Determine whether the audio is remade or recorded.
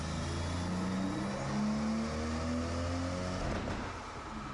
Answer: recorded